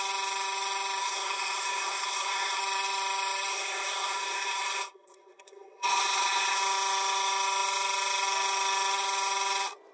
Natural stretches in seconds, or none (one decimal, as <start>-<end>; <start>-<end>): 0.0-1.0; 2.6-3.5; 6.6-9.9